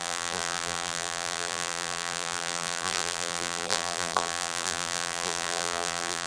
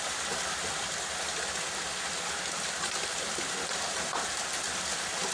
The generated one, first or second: first